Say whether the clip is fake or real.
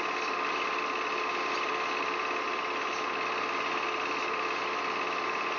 real